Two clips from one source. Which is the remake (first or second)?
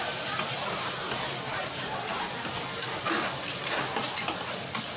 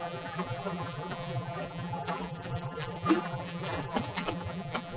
second